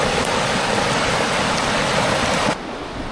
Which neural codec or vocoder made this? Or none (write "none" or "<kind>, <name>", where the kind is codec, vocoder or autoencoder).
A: none